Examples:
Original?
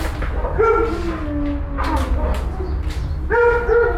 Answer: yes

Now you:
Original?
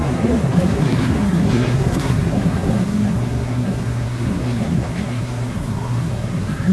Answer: no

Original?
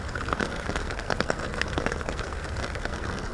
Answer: no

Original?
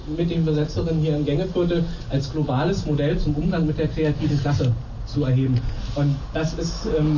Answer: yes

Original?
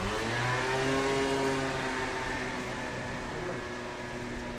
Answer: yes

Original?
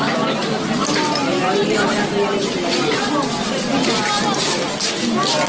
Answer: yes